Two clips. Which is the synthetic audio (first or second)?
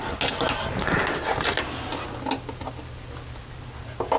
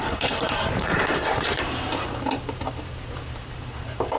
second